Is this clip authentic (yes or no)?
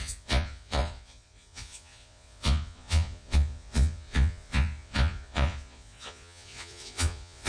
no